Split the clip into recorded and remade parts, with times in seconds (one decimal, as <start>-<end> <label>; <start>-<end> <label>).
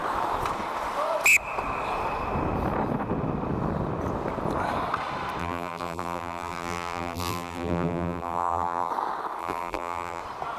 0.0-5.4 recorded; 5.4-8.9 remade; 8.9-9.4 recorded; 9.4-10.2 remade; 10.2-10.6 recorded